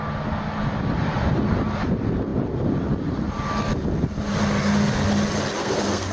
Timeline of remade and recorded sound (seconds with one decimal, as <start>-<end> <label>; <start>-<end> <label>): 0.0-5.6 recorded; 5.6-6.1 remade